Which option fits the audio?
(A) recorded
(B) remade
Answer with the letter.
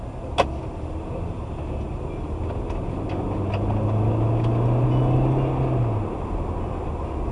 A